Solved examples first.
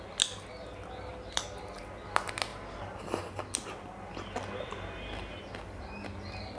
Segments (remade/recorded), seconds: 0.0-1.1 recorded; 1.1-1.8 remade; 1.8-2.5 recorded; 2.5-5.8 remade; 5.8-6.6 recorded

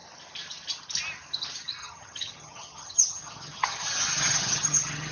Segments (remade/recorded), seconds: 0.0-1.8 recorded; 1.8-5.1 remade

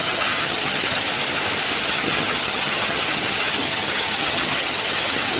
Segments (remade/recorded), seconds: 0.0-1.1 remade; 1.1-1.8 recorded; 1.8-5.4 remade